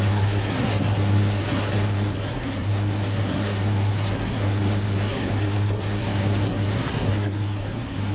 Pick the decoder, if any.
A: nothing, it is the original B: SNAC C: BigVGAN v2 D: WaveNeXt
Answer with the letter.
B